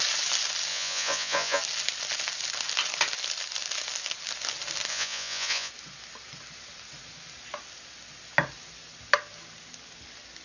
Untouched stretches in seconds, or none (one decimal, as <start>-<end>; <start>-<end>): 0.0-0.7; 1.6-4.9; 5.7-10.4